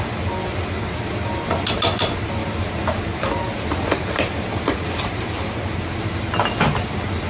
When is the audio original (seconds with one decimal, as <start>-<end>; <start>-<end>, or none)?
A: 0.0-2.4; 6.0-7.3